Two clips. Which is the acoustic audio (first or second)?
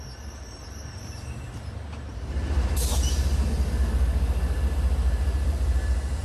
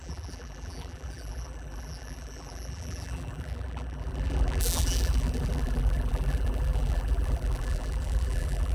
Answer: first